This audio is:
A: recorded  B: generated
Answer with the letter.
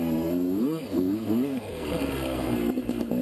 B